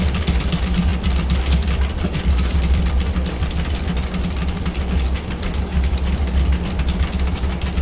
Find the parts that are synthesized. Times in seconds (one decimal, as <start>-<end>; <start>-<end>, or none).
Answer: 0.9-3.8